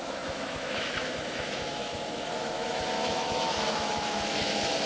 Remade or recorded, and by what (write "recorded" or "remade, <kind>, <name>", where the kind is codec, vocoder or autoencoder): remade, autoencoder, DAC-VAE